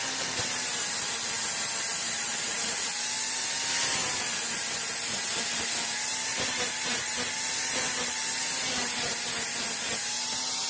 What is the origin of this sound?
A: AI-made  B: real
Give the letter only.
B